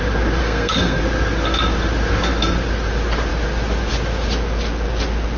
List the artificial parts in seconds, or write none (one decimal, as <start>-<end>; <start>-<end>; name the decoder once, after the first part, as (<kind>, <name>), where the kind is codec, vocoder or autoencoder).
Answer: 0.4-1.0 (codec, SNAC)